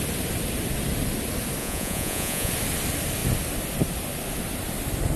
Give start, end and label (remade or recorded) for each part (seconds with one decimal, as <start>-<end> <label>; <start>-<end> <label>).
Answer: 0.0-1.6 recorded; 1.6-2.5 remade; 2.5-5.2 recorded